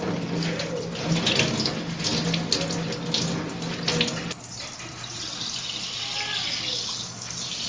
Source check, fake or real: real